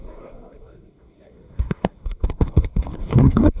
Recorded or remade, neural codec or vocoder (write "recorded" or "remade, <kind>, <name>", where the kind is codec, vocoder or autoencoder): remade, codec, SNAC